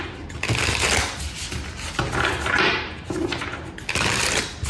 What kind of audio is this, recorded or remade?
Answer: recorded